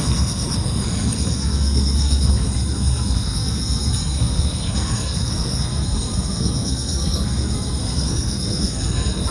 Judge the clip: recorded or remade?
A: remade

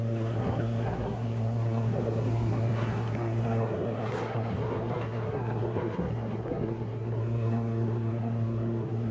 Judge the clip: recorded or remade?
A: remade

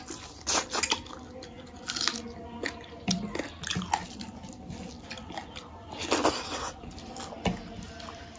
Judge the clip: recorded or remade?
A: recorded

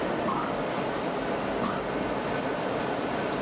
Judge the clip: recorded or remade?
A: recorded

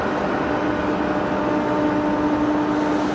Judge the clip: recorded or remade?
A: recorded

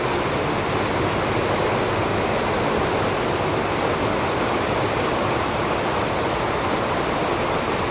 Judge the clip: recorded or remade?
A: recorded